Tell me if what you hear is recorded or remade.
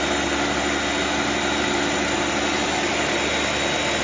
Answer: recorded